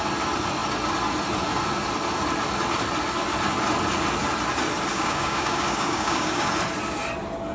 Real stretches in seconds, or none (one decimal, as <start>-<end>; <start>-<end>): 0.0-4.9; 6.5-7.5